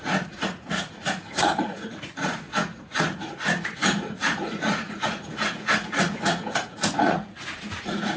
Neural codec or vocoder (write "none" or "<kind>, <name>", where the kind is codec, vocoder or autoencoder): vocoder, Vocos